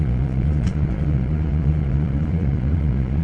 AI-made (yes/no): yes